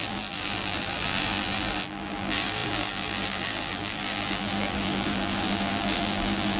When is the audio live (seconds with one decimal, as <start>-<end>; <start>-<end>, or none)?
none